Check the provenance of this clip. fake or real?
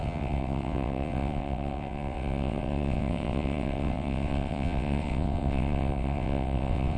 fake